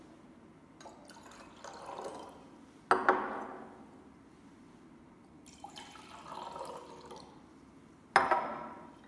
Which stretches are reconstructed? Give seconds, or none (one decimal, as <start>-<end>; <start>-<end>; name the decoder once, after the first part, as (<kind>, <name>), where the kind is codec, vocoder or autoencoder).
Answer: none